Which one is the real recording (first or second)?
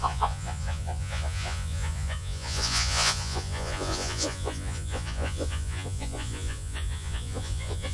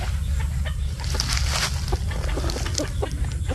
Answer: second